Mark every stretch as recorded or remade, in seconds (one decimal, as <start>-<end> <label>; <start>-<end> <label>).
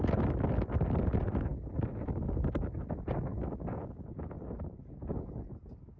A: 0.0-6.0 recorded